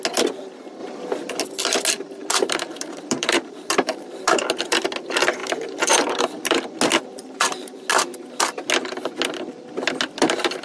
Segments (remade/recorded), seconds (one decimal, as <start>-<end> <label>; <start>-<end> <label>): 0.0-2.2 recorded; 2.2-4.4 remade; 4.4-5.4 recorded; 5.4-6.6 remade; 6.6-7.1 recorded; 7.1-7.9 remade; 7.9-10.6 recorded